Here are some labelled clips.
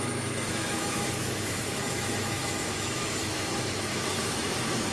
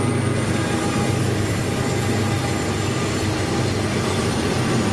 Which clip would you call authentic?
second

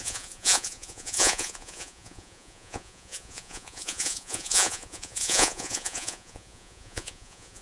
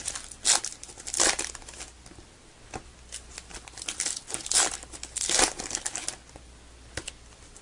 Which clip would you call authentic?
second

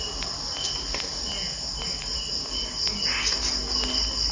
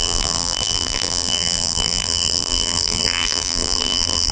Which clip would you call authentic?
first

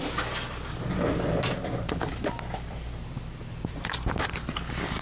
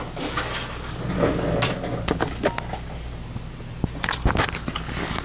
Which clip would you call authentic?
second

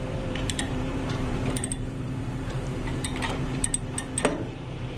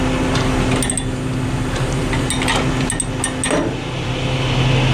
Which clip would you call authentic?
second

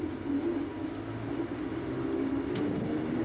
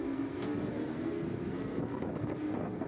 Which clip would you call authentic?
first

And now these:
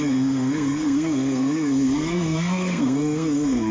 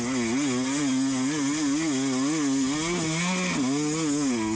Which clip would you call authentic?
second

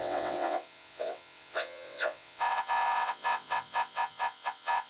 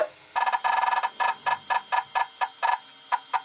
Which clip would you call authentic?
second